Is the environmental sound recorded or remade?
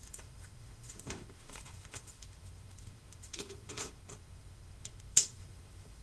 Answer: remade